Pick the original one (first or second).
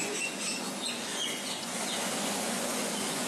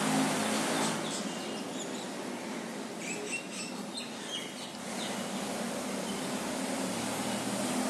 second